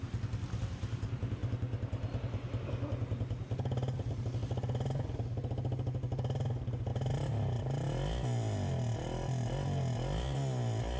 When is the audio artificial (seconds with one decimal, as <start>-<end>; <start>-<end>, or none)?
none